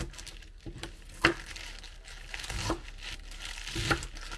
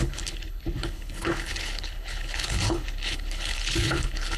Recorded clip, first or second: first